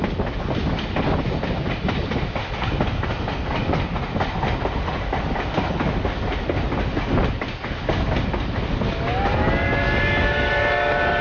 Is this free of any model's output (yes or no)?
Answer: yes